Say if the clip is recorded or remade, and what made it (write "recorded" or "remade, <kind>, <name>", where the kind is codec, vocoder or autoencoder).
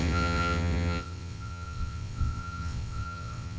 remade, vocoder, WaveNeXt